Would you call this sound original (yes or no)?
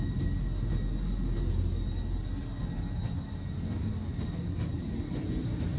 yes